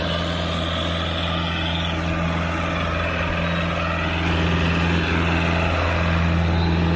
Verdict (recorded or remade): recorded